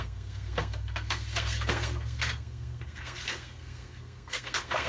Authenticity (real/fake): fake